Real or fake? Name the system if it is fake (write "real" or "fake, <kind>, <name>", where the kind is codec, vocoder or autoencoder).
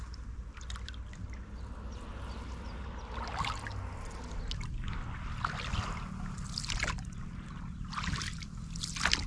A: real